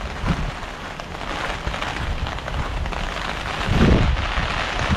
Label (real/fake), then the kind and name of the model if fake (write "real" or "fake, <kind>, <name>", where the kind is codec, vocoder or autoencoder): real